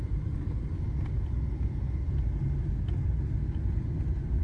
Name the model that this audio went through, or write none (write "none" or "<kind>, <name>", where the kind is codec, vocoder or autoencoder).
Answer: none